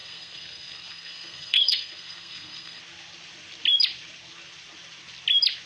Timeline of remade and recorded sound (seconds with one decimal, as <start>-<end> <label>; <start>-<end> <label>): 0.0-2.8 remade; 2.8-5.7 recorded